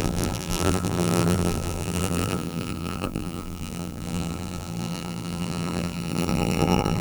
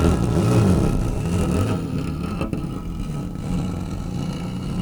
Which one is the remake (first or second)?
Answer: first